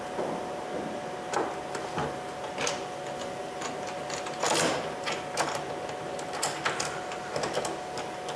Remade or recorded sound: recorded